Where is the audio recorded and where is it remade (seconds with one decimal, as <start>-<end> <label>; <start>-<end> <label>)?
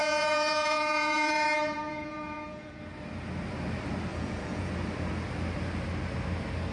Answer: 0.0-2.7 remade; 2.7-4.1 recorded; 4.1-4.7 remade; 4.7-6.7 recorded